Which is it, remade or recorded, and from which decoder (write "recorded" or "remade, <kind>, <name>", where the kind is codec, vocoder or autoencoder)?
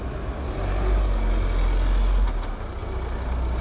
recorded